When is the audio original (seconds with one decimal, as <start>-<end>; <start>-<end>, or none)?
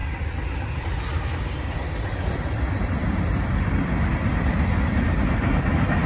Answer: 0.0-6.1